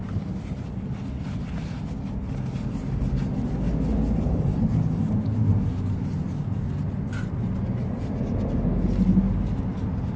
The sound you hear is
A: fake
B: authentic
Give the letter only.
B